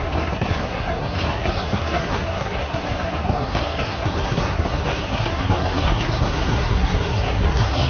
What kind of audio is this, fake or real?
fake